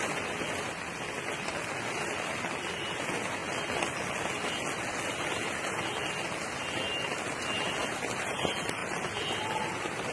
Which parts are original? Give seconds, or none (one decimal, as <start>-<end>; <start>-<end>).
0.0-10.1